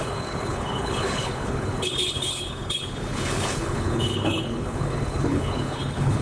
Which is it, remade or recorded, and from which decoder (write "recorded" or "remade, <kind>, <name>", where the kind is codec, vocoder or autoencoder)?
remade, codec, HILCodec